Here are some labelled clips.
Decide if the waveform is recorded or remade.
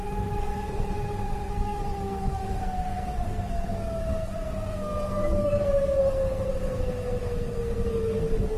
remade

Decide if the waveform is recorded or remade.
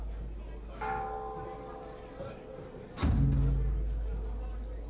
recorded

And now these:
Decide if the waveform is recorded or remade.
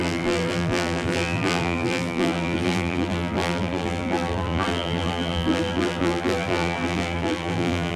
remade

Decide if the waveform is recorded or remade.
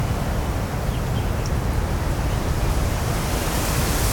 recorded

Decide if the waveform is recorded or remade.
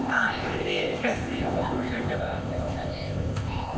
remade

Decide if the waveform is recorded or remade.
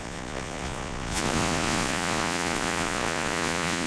remade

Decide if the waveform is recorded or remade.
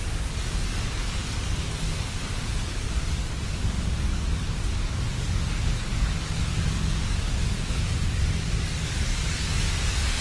remade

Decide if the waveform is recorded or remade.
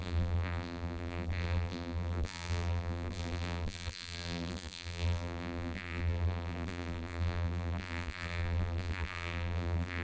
remade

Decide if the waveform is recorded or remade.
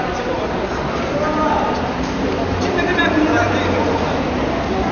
recorded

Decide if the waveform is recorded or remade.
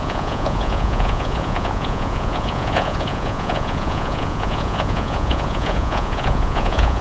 remade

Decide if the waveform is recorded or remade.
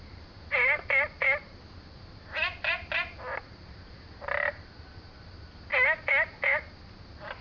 recorded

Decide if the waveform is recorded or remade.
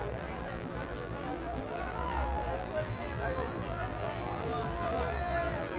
remade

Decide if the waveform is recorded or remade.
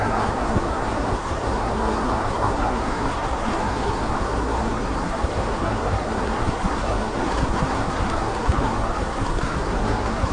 remade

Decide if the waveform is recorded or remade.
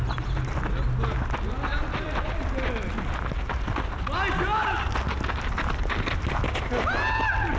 recorded